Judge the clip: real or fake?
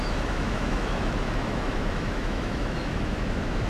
fake